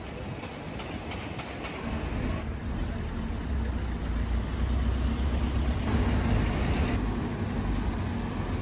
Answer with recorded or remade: recorded